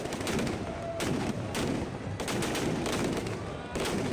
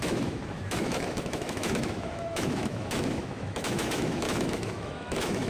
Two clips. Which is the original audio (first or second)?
first